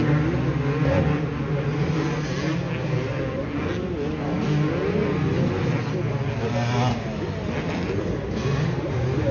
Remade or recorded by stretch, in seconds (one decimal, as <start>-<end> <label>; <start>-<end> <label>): 0.0-9.3 recorded